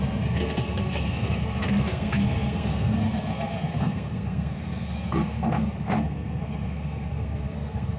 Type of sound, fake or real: fake